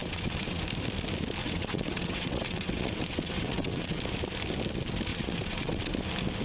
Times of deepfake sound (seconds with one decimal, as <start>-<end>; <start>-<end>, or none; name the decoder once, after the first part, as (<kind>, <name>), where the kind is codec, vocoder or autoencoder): 0.0-0.6 (vocoder, WaveNeXt); 1.4-4.0; 5.1-5.9

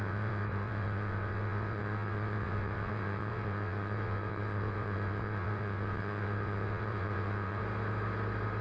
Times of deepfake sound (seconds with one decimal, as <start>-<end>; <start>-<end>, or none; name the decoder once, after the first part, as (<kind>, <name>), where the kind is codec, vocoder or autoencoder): 0.0-7.6 (vocoder, WaveNeXt)